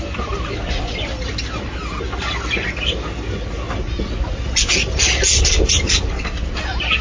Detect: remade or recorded recorded